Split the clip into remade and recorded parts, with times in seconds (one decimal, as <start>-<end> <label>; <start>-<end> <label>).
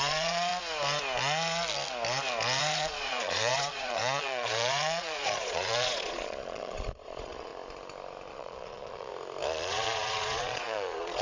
0.0-0.5 remade; 0.5-2.6 recorded; 2.6-7.5 remade; 7.5-8.3 recorded; 8.3-9.1 remade; 9.1-9.7 recorded; 9.7-11.2 remade